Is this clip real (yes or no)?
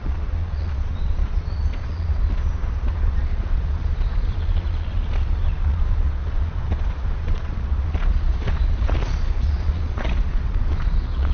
no